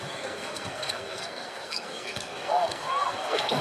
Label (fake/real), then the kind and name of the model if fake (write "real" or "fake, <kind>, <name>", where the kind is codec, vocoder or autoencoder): fake, codec, SNAC